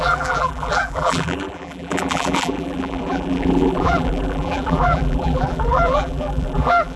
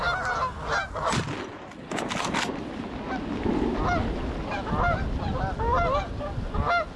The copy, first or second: first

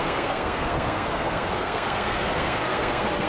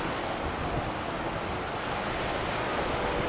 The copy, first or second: first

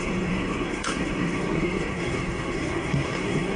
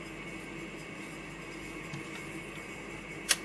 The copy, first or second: first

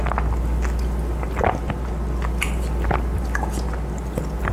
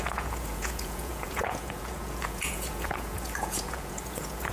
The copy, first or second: second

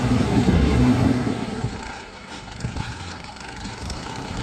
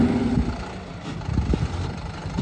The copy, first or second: first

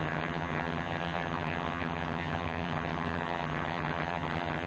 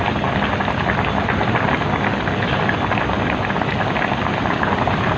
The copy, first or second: first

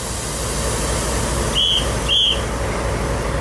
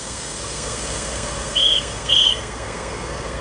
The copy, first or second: second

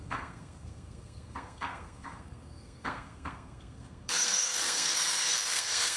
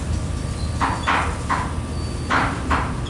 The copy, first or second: first